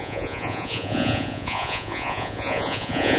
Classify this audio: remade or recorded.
remade